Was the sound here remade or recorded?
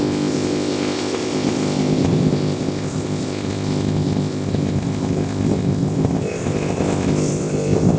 remade